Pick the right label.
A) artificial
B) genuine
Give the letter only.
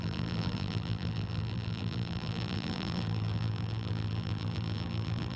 A